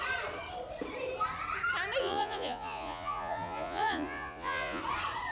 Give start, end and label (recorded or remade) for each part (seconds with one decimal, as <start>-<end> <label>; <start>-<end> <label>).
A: 0.0-2.0 recorded; 2.0-4.8 remade; 4.8-5.3 recorded